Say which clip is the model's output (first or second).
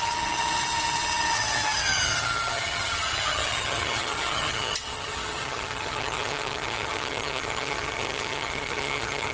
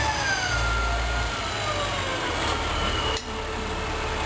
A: first